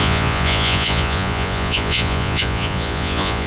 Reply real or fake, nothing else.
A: fake